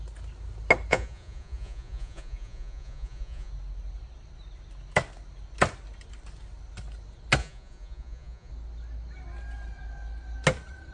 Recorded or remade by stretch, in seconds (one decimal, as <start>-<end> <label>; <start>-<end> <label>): 0.0-0.9 recorded; 0.9-3.5 remade; 3.5-7.4 recorded; 7.4-8.5 remade; 8.5-10.9 recorded